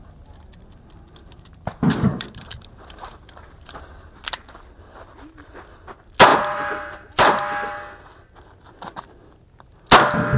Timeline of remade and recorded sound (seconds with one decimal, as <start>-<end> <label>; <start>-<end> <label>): 0.0-1.2 recorded; 1.2-4.1 remade; 4.1-6.3 recorded; 6.3-7.4 remade; 7.4-10.4 recorded